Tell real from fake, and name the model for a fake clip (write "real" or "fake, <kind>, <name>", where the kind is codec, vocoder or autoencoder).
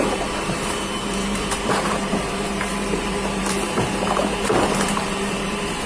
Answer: fake, vocoder, BigVGAN v2